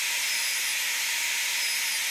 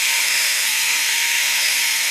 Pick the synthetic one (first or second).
second